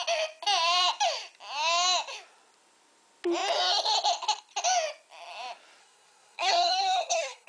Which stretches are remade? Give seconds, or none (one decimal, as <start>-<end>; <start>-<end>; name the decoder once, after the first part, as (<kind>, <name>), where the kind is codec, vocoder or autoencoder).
5.8-7.5 (codec, SNAC)

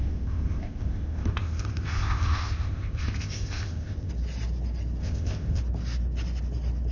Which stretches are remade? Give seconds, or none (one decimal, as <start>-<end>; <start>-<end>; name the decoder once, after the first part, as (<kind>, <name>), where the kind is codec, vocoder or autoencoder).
0.0-4.1 (codec, ZipCodec); 5.0-5.6